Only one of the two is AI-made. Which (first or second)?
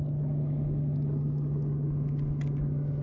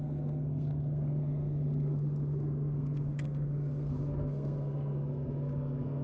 second